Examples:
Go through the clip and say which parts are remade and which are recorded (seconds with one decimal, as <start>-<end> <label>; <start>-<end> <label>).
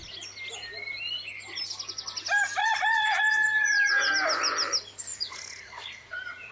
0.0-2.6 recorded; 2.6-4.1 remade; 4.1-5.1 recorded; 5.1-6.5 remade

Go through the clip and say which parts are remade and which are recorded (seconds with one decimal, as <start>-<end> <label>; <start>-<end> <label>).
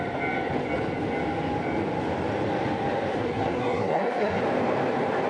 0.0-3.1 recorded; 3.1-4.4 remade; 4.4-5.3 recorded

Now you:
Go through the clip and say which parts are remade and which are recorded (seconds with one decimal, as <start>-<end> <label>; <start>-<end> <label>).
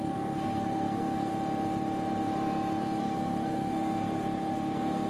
0.0-1.3 remade; 1.3-3.0 recorded; 3.0-5.1 remade